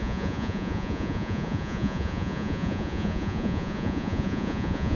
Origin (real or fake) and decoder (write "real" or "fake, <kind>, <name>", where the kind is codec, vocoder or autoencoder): fake, vocoder, Vocos